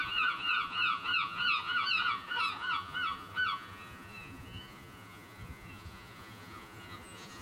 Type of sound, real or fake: fake